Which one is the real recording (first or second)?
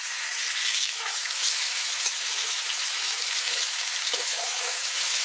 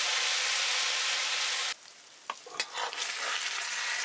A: second